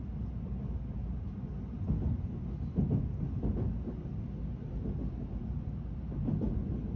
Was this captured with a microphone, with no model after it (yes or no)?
yes